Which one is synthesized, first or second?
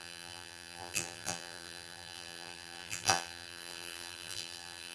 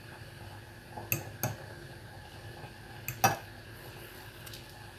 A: first